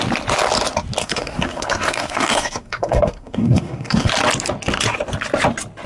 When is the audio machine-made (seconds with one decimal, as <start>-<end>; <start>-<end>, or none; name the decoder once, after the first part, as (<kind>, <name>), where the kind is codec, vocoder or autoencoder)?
1.0-4.1 (codec, SNAC)